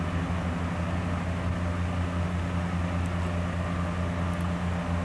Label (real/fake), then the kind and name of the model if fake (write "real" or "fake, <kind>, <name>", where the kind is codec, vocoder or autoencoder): real